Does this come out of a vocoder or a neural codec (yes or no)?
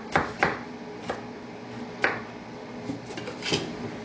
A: no